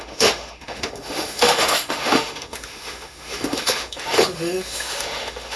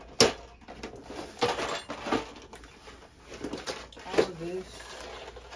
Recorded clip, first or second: second